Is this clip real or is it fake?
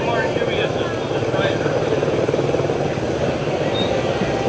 real